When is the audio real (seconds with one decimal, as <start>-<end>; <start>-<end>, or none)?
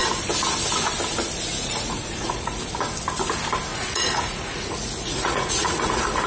0.0-1.5; 2.6-3.7